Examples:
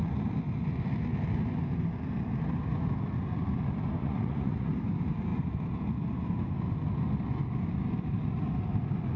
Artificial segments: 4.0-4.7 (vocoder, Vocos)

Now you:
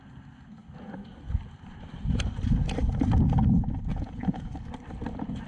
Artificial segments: 3.9-4.5 (vocoder, Vocos)

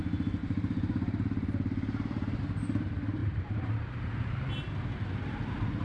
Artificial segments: 0.4-2.4 (vocoder, BigVGAN v2); 3.2-4.1

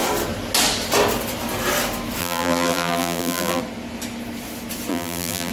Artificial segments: 2.2-3.6 (vocoder, BigVGAN v2); 4.9-5.5

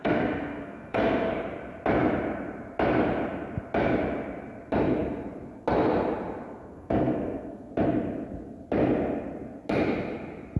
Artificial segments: 0.0-1.3 (codec, SNAC); 6.5-7.7

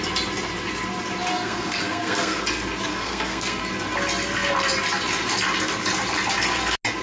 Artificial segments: 1.3-2.4 (codec, SNAC); 2.9-3.6

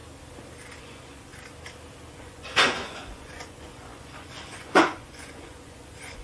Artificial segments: 0.8-1.3 (vocoder, Vocos); 2.1-6.2

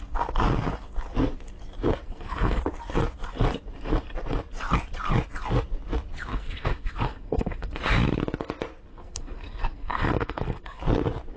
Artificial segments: 2.0-2.6 (codec, SNAC); 6.3-7.7; 8.9-10.8